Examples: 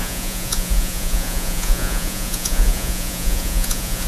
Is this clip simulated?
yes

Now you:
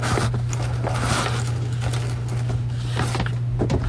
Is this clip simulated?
no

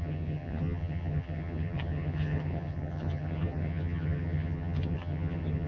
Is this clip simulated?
yes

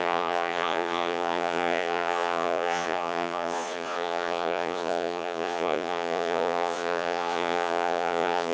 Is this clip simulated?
yes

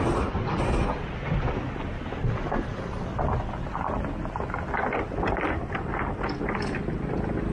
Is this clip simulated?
no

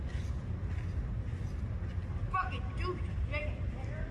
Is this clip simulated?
no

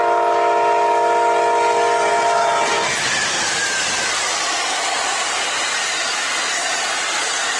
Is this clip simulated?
no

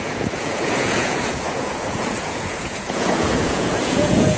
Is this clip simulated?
yes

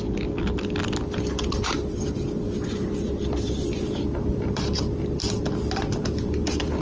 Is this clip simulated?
no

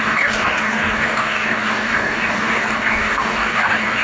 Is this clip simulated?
yes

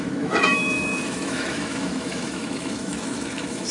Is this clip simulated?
yes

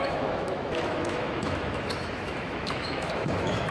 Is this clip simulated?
yes